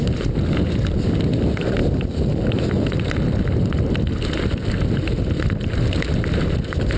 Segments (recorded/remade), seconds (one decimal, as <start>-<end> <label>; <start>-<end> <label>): 0.0-7.0 recorded